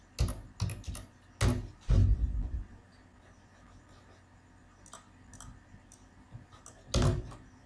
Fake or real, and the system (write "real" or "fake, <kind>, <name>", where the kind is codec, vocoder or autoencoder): real